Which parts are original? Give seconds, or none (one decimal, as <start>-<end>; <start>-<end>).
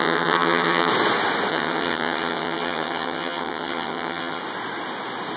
0.9-1.5; 4.4-5.4